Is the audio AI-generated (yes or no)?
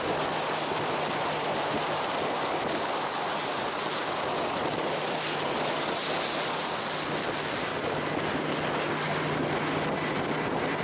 no